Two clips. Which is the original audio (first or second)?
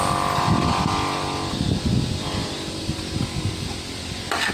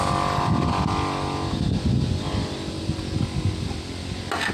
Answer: second